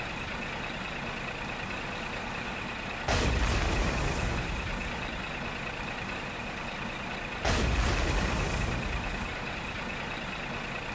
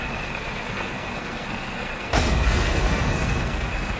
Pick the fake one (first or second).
second